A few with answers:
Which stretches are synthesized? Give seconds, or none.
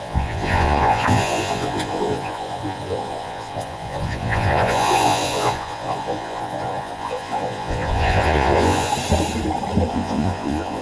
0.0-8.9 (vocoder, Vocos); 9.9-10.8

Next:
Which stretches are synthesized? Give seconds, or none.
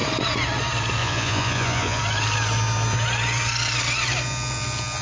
1.0-2.0 (vocoder, Vocos)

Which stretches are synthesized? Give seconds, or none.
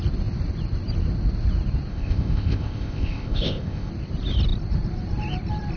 1.9-3.9 (codec, ZipCodec)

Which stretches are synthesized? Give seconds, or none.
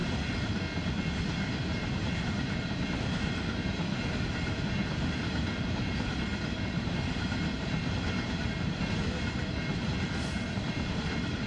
1.1-11.5 (vocoder, BigVGAN v2)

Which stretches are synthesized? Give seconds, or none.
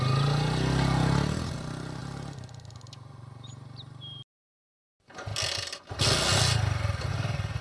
none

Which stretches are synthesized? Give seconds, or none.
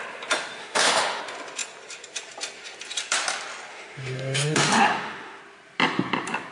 0.6-1.2 (autoencoder, DAC-VAE); 3.7-5.4